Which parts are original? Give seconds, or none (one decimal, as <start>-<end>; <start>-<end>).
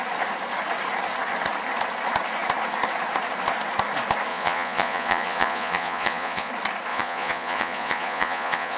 0.0-4.3; 6.5-6.9